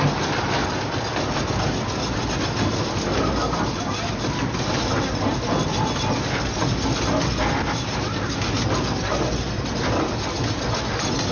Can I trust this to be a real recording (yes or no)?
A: yes